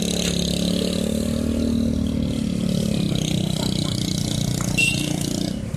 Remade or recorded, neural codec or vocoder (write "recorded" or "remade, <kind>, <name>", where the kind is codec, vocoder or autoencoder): recorded